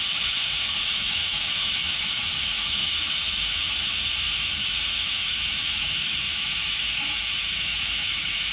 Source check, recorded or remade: remade